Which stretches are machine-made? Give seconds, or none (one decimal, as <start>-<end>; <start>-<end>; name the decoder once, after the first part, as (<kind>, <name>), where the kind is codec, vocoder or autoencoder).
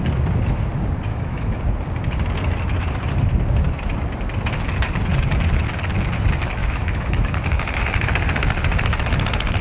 1.1-1.6 (autoencoder, DAC-VAE); 6.6-7.8